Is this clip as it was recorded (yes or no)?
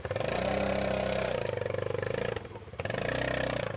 yes